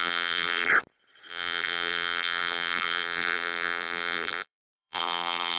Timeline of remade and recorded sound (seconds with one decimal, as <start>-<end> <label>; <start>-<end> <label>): 0.0-0.7 remade; 0.7-1.3 recorded; 1.3-5.6 remade